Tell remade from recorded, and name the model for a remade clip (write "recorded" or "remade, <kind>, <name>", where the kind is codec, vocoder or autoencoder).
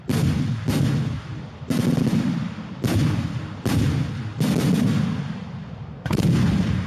recorded